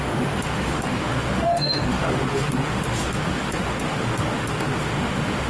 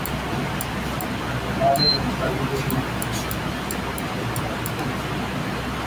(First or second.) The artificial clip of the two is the first